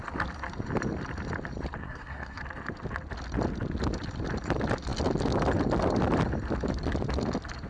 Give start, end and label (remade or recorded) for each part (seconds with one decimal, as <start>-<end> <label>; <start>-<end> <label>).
0.0-1.8 recorded; 1.8-2.4 remade; 2.4-7.7 recorded